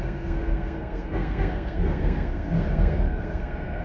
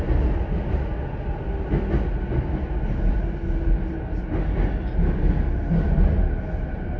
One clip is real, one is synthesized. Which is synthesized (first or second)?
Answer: first